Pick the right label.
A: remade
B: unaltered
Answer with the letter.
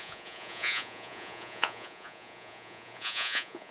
A